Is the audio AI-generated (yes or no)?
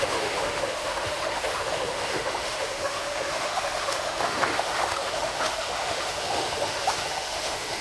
yes